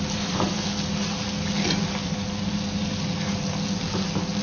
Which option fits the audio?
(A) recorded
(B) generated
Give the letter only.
A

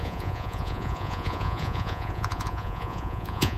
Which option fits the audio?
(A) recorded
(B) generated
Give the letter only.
B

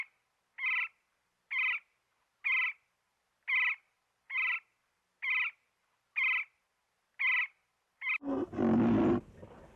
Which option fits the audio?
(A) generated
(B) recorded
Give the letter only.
B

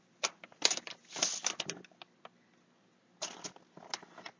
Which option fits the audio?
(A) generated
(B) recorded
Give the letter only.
B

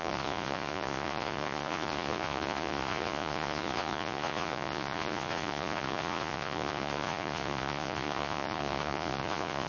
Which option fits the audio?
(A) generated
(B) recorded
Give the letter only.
A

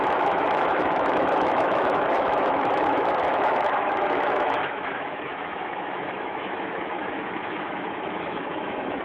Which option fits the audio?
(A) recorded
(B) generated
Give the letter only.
B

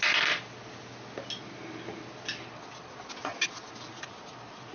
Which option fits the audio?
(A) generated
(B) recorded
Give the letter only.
B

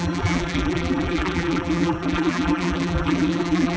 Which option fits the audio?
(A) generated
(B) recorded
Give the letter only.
A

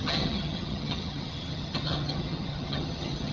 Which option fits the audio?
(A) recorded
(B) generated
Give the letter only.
B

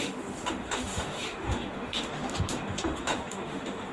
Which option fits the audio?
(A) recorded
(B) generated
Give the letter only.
B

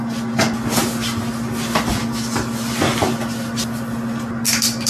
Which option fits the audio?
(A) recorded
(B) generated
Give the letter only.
B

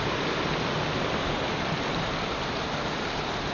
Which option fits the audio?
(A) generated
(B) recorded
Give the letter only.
B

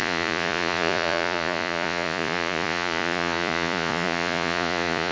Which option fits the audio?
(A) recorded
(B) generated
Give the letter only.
B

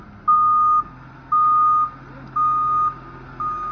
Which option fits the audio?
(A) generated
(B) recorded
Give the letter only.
B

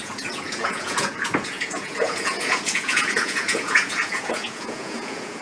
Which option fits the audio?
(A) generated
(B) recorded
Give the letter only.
A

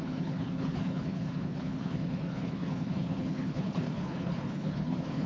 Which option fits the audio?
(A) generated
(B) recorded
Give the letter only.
A